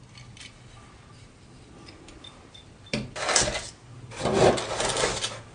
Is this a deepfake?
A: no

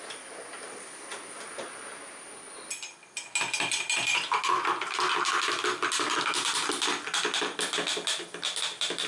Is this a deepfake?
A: no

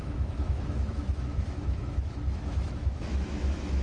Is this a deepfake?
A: yes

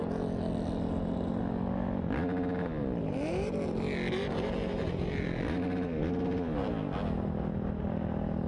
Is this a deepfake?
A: no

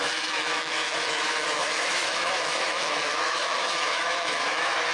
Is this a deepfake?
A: yes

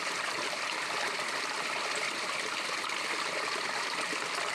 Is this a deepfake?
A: no